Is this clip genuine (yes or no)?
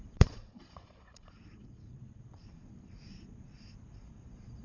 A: no